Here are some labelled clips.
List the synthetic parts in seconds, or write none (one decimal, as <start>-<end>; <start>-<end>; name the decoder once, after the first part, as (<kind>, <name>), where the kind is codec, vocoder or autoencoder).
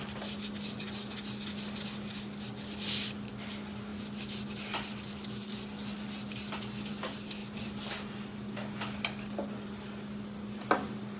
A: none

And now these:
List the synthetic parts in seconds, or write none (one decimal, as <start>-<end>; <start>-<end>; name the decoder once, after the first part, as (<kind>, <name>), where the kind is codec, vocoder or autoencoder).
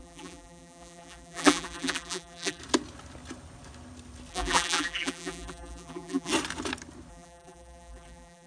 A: 0.0-2.6 (vocoder, BigVGAN v2); 4.3-6.3; 7.1-8.5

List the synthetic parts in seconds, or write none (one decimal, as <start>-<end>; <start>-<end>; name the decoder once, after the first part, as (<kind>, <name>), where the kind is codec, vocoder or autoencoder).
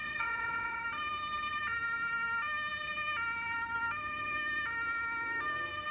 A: 0.0-0.8 (vocoder, WaveNeXt)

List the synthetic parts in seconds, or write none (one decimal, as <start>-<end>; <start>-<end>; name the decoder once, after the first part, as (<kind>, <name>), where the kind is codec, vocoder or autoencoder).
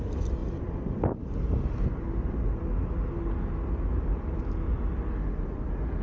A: none